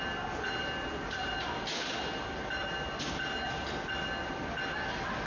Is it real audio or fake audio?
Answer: real